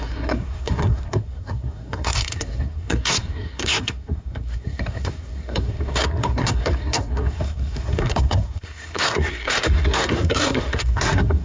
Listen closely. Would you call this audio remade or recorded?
remade